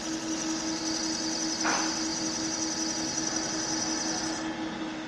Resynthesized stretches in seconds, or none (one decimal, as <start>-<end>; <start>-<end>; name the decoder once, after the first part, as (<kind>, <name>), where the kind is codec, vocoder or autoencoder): none